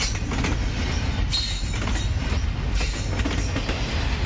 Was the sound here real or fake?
real